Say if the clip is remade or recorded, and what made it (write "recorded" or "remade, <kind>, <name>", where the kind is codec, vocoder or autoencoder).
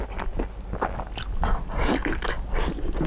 recorded